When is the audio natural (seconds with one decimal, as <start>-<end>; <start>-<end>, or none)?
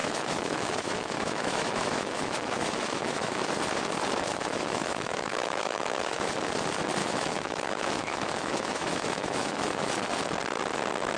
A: 3.5-4.3; 6.2-7.0; 9.9-11.2